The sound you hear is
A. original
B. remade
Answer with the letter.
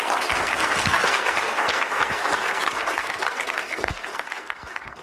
B